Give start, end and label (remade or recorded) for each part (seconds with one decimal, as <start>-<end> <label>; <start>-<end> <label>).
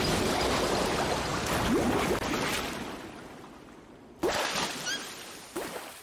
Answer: 0.0-6.0 recorded